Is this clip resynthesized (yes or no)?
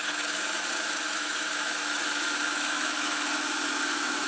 yes